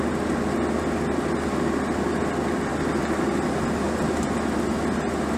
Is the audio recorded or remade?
recorded